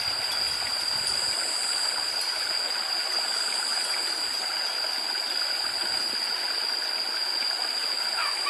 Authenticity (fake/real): real